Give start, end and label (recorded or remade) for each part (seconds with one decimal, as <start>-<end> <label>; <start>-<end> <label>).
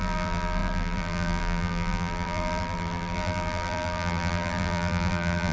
0.0-5.5 remade